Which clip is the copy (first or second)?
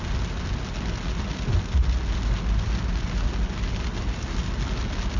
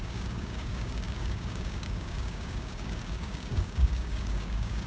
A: second